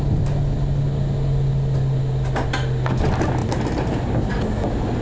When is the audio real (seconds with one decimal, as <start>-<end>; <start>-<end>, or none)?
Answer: 0.0-5.0